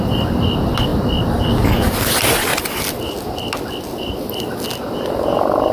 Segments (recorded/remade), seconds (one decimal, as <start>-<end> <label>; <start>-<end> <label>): 0.0-5.7 recorded